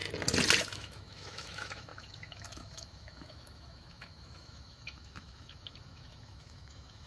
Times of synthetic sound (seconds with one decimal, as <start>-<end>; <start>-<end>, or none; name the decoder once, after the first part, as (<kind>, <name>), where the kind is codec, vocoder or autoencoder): 0.6-7.1 (autoencoder, DAC-VAE)